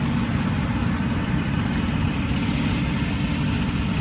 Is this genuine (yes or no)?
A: yes